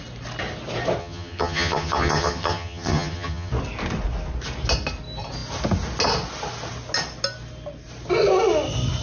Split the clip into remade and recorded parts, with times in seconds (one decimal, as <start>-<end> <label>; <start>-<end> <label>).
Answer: 0.0-1.0 recorded; 1.0-3.5 remade; 3.5-9.0 recorded